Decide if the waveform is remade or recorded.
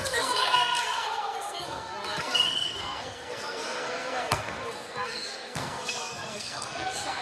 remade